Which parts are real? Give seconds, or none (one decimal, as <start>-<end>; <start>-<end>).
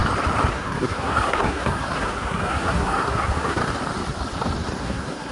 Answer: 0.0-0.5; 3.6-4.8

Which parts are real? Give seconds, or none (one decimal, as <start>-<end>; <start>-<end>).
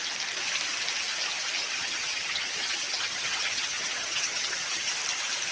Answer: 0.0-1.6; 4.9-5.5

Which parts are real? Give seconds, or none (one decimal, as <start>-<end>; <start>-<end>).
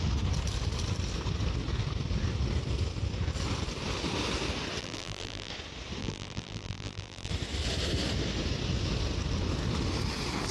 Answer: 0.0-4.8; 5.5-6.0; 7.3-10.5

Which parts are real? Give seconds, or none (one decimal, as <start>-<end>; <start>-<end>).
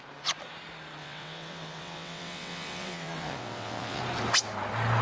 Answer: 0.0-1.0; 4.0-5.0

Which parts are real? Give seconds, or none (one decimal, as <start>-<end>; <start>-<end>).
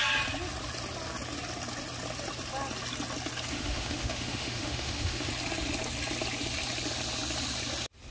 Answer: 0.0-3.5; 5.3-8.1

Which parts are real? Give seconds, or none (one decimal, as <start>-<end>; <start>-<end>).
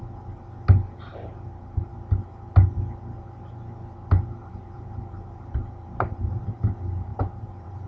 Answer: 0.0-1.1; 1.9-4.4; 6.4-7.1